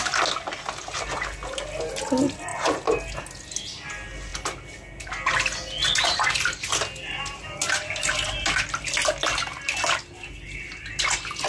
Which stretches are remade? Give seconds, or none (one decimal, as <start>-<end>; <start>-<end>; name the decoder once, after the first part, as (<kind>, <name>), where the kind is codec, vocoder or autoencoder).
none